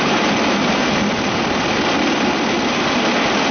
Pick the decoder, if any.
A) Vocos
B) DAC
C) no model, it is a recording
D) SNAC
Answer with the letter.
C